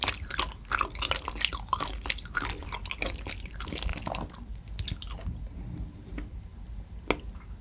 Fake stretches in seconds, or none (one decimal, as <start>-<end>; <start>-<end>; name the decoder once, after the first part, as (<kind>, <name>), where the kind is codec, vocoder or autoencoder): none